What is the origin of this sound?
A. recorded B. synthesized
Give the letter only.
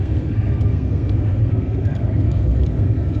B